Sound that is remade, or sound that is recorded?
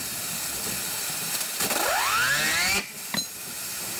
recorded